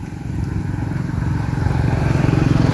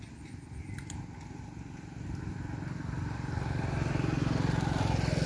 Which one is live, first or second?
second